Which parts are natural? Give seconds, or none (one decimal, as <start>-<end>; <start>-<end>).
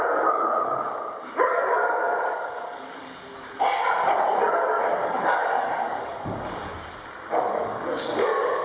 3.3-4.5; 6.7-7.5